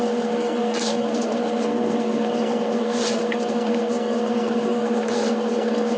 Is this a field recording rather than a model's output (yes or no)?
no